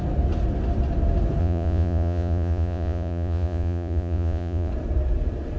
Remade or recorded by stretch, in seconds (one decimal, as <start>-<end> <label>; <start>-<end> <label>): 0.0-1.4 recorded; 1.4-4.7 remade; 4.7-5.6 recorded